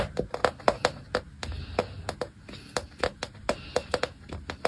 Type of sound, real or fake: real